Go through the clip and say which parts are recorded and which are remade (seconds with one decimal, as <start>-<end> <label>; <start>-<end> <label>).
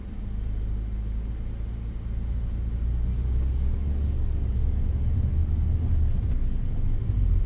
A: 0.0-3.1 recorded; 3.1-4.8 remade; 4.8-7.5 recorded